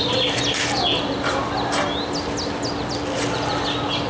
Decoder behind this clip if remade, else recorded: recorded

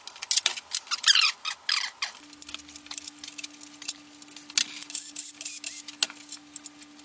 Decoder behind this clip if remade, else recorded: recorded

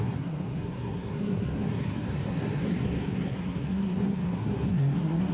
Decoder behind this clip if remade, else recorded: remade, codec, SNAC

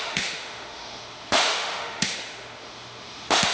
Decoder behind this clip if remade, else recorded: remade, autoencoder, DAC-VAE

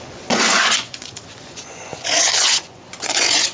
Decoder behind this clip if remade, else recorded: remade, vocoder, Vocos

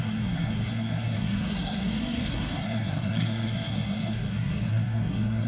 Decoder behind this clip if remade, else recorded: remade, codec, SNAC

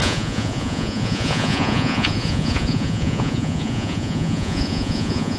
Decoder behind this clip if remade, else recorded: remade, vocoder, Vocos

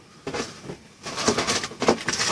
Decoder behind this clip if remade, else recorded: recorded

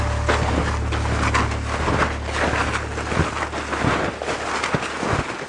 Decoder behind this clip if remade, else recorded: recorded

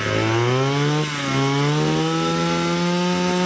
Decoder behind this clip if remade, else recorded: recorded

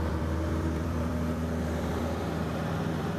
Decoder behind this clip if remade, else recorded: remade, vocoder, BigVGAN v2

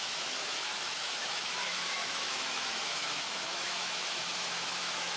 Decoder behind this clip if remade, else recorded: remade, autoencoder, DAC-VAE